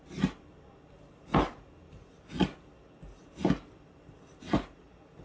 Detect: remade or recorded recorded